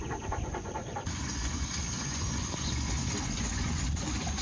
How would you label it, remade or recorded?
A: remade